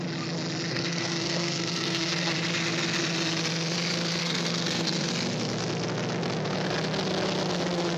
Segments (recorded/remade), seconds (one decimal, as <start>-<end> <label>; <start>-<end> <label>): 0.0-0.7 recorded; 0.7-2.3 remade; 2.3-4.2 recorded; 4.2-5.1 remade; 5.1-8.0 recorded